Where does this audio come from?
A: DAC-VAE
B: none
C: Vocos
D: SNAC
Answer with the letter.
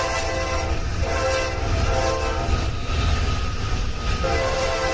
B